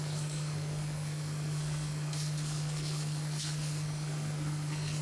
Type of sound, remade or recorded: remade